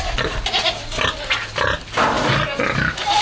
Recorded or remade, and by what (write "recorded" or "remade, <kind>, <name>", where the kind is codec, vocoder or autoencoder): recorded